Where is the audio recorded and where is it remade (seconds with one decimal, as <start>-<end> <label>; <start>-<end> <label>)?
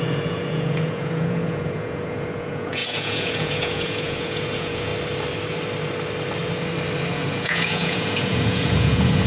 0.0-4.9 remade; 4.9-7.1 recorded; 7.1-9.3 remade